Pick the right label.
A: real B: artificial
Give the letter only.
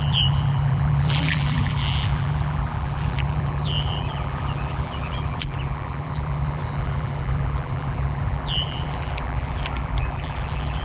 B